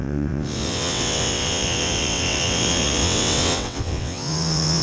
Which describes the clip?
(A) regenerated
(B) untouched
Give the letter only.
A